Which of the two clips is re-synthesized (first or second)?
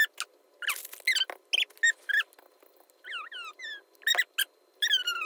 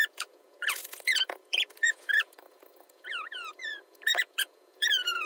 second